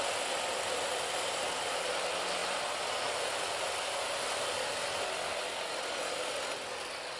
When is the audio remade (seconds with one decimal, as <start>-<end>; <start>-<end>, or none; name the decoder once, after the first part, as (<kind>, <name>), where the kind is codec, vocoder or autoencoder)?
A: none